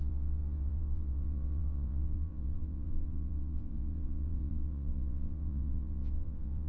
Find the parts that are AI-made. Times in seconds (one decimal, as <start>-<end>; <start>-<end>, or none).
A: 0.0-6.7